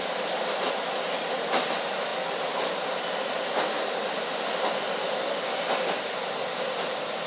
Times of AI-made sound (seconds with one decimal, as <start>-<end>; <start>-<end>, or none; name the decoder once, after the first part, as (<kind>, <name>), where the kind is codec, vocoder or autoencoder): none